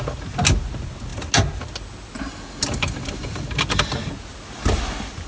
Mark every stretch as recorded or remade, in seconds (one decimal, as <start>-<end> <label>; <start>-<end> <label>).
0.0-5.3 recorded